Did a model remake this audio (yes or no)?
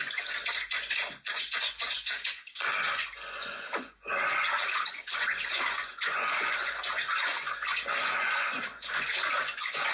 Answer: yes